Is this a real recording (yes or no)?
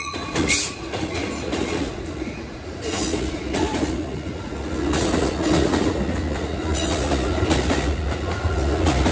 no